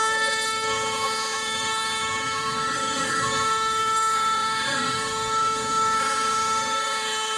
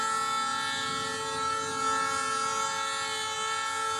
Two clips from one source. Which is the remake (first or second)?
first